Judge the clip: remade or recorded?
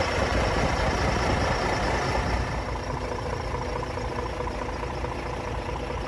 recorded